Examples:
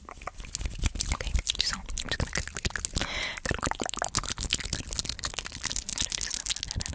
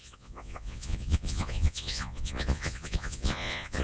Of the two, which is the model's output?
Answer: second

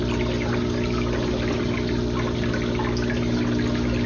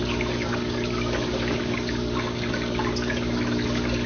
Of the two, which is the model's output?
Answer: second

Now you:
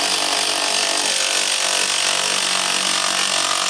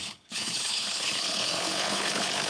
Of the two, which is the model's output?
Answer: second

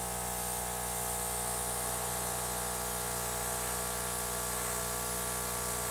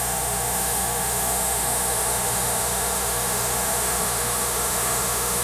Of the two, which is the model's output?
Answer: second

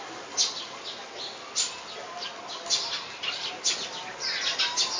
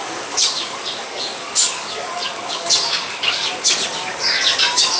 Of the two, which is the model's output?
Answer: second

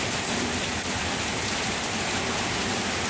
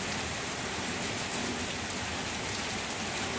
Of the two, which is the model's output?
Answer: first